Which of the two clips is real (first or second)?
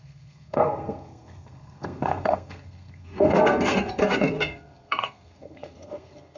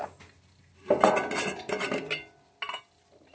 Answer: second